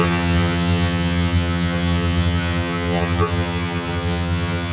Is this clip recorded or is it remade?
remade